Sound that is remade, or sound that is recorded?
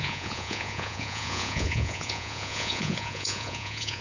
remade